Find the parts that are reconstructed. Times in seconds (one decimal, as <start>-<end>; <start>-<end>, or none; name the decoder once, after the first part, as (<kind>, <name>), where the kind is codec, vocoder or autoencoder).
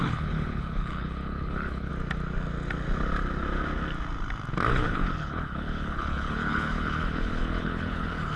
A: 0.0-1.9 (codec, HILCodec); 4.7-8.4